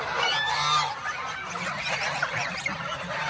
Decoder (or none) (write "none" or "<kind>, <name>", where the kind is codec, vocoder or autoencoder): none